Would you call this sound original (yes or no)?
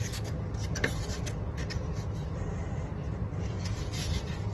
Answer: yes